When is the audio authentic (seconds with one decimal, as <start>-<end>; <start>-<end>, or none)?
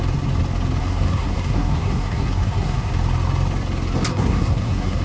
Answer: 0.0-0.8; 2.9-4.1